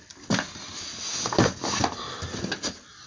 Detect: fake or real real